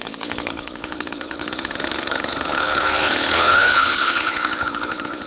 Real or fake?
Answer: fake